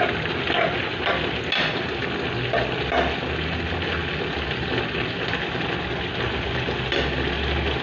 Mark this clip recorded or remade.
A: recorded